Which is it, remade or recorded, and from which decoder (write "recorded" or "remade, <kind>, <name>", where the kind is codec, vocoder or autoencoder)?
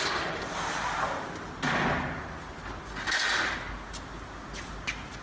recorded